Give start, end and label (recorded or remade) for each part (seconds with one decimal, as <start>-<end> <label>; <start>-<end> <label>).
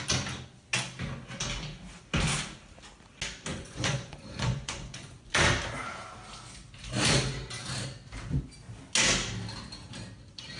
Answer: 0.0-3.5 recorded; 3.5-5.3 remade; 5.3-10.6 recorded